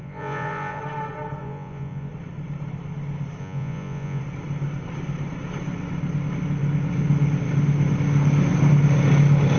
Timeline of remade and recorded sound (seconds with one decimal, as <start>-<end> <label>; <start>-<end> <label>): 0.0-0.8 remade; 0.8-1.4 recorded; 1.4-2.1 remade; 2.1-3.4 recorded; 3.4-4.2 remade; 4.2-9.6 recorded